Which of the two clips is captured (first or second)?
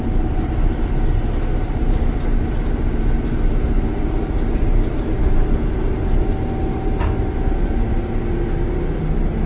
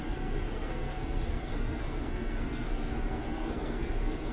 first